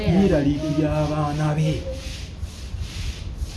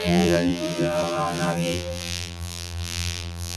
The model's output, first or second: second